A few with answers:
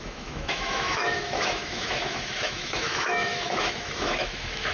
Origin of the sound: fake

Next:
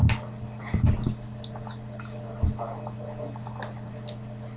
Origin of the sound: real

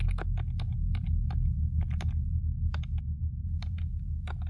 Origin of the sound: real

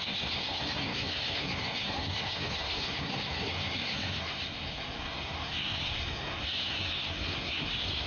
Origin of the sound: fake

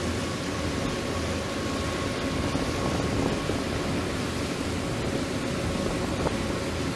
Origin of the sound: real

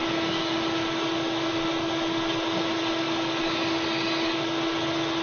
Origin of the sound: real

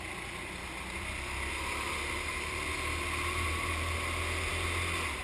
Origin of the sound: real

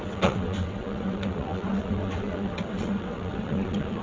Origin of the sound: fake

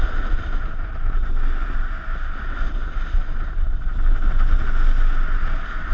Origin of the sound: real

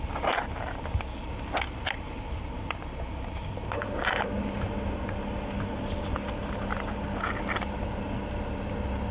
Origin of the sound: real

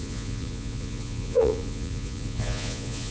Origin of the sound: fake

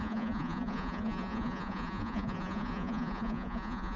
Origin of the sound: fake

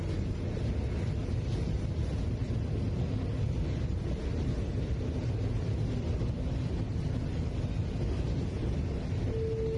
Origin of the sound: real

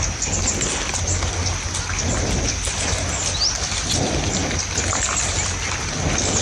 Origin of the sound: real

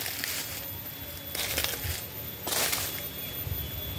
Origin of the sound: real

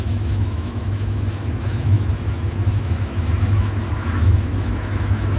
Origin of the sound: fake